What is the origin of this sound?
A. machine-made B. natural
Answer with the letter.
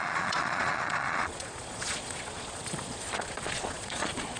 A